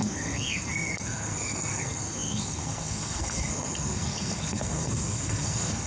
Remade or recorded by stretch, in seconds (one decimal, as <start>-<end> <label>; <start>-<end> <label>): 0.0-5.9 remade